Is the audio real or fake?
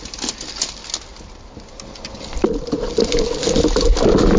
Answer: real